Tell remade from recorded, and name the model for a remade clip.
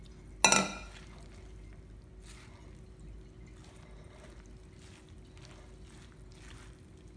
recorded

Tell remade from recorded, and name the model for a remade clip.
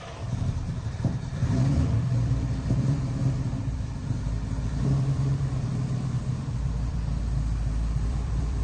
remade, vocoder, BigVGAN v2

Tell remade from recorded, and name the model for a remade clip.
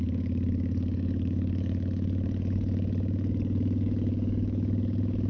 remade, codec, DAC